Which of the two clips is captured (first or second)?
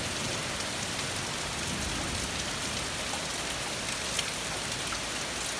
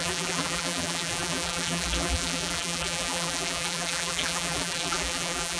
first